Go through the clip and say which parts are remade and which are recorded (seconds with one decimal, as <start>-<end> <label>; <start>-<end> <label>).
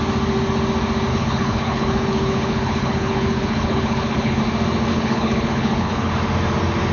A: 0.0-1.1 recorded; 1.1-4.4 remade; 4.4-4.9 recorded; 4.9-6.1 remade; 6.1-6.9 recorded